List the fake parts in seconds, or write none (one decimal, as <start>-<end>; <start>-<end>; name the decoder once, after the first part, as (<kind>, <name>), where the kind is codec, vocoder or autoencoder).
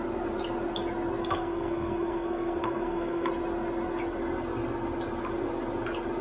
1.2-3.3 (codec, SNAC)